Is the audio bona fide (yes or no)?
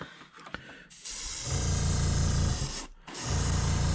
yes